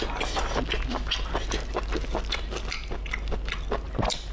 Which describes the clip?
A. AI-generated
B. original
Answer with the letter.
B